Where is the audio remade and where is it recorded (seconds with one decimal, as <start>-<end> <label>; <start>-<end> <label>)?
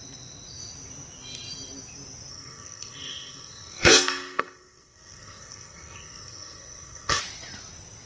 0.0-2.3 recorded; 2.3-7.2 remade; 7.2-8.1 recorded